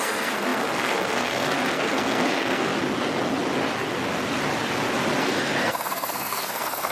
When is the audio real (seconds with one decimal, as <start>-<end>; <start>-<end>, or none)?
2.7-5.2